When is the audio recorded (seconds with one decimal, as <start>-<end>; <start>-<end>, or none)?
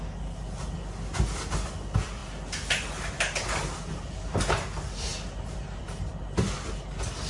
0.0-7.3